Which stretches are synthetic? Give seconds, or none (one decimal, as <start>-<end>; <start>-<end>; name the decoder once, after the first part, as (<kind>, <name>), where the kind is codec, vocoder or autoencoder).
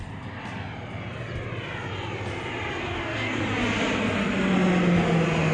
2.8-3.4 (codec, DAC)